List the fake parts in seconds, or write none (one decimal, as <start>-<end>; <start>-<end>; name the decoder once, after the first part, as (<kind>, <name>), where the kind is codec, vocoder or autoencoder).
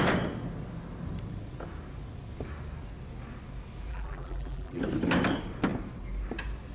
3.9-4.8 (vocoder, BigVGAN v2)